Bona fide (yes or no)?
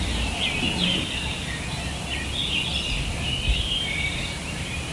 yes